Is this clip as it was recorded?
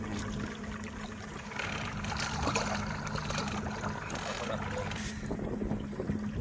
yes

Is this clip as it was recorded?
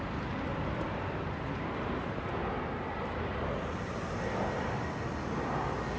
yes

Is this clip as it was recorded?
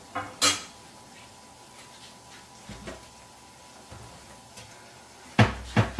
yes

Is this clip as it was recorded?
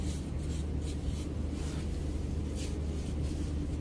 yes